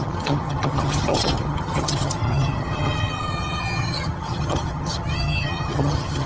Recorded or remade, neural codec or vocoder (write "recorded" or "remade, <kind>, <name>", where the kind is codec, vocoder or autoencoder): remade, vocoder, HiFi-GAN